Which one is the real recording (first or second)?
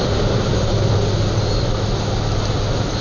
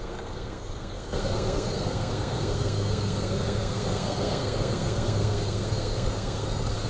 first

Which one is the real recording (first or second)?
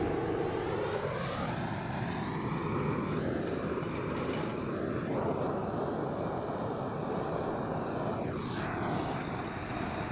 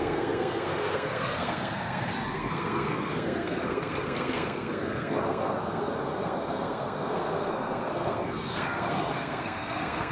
first